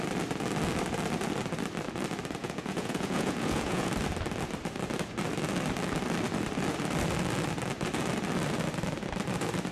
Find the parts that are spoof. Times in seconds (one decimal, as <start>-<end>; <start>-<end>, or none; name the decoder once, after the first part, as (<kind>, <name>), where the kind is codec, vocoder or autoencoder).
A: 2.4-3.9 (vocoder, Vocos)